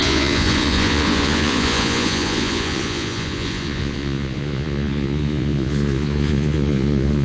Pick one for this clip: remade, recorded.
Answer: remade